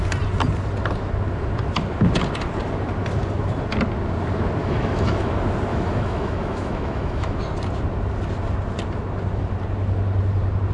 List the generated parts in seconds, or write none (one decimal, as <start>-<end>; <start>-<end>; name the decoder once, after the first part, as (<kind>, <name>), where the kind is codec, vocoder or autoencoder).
4.6-5.3 (autoencoder, DAC-VAE); 5.7-7.4